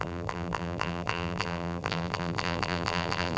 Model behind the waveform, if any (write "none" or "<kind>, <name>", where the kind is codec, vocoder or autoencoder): vocoder, BigVGAN v2